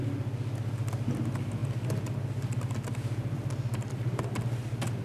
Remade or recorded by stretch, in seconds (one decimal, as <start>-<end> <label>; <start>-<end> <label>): 0.0-5.0 recorded